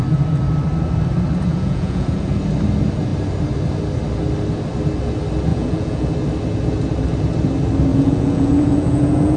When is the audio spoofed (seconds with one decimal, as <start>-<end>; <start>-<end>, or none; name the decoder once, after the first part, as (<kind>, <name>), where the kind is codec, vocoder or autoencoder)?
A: 1.5-2.3 (vocoder, Vocos); 5.5-6.1; 7.9-9.4